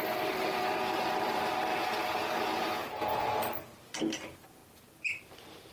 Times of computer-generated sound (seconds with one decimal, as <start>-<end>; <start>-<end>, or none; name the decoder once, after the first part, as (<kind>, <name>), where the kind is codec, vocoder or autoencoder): 1.7-2.3 (vocoder, Vocos); 2.8-3.3